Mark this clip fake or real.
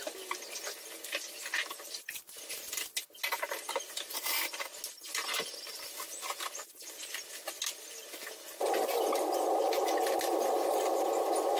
real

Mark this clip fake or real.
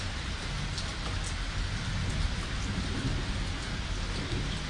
real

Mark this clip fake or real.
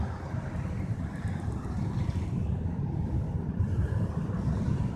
fake